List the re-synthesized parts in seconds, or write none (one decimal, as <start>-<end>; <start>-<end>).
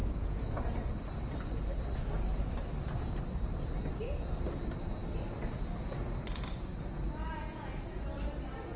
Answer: 0.0-0.9; 7.2-8.0